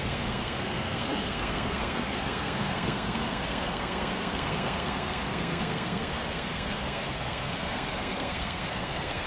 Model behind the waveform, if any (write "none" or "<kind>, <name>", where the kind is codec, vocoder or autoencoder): codec, SNAC